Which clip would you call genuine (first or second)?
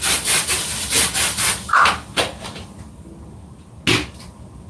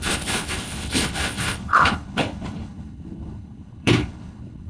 first